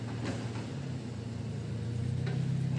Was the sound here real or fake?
real